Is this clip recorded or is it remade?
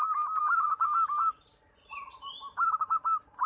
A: recorded